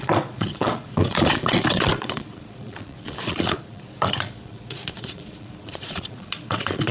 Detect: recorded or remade remade